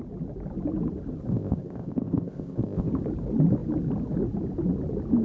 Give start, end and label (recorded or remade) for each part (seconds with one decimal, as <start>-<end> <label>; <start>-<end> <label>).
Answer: 0.0-1.3 recorded; 1.3-2.9 remade; 2.9-5.2 recorded